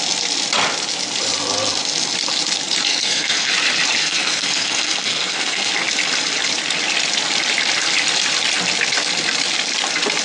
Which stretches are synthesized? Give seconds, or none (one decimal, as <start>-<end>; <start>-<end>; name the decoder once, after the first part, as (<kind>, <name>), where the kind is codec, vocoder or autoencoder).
2.9-3.5 (codec, SNAC); 4.0-5.7